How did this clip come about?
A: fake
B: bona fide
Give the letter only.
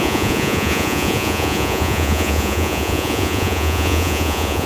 A